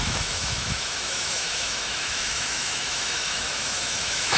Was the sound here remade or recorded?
remade